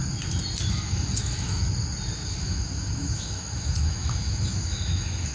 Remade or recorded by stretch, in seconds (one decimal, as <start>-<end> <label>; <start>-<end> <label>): 0.0-0.7 recorded; 0.7-1.6 remade; 1.6-2.4 recorded; 2.4-5.3 remade